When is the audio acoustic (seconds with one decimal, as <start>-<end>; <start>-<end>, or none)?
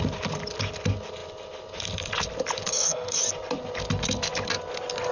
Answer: 0.0-2.7; 3.2-5.1